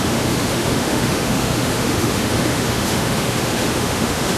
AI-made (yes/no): yes